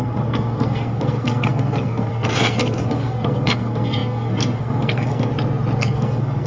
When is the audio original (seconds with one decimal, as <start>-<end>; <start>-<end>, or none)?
5.3-5.8